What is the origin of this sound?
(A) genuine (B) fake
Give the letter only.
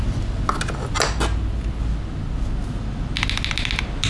A